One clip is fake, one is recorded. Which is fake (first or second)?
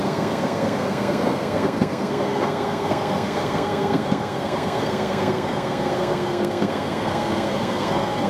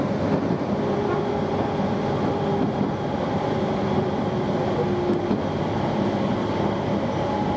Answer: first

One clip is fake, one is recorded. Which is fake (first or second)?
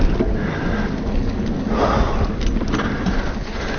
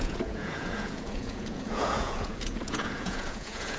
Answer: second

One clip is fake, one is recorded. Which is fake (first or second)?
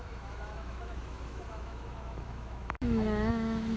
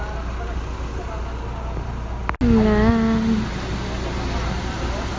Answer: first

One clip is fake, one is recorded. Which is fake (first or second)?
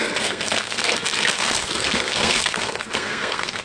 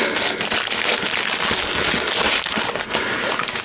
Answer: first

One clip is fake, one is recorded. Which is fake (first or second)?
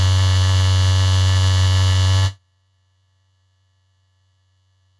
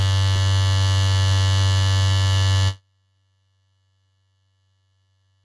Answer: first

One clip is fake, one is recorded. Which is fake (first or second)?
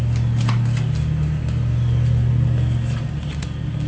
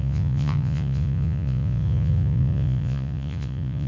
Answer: second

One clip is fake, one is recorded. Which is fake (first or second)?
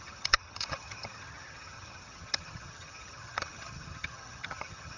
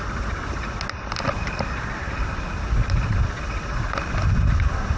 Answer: first